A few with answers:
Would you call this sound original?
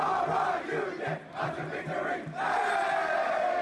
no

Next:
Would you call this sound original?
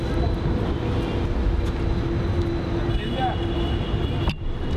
yes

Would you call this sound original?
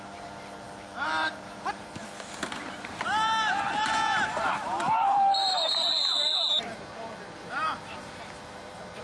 no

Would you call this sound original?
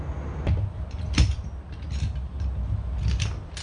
yes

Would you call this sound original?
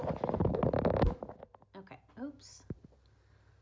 yes